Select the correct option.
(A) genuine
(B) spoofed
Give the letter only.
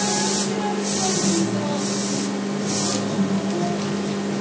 A